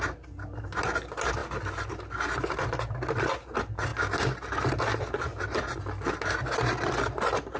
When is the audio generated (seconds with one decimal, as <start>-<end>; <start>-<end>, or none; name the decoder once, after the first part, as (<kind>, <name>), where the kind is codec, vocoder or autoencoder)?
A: none